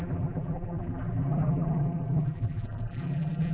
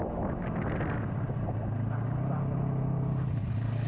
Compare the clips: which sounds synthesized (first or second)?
first